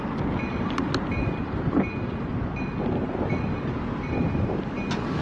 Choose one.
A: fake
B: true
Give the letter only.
B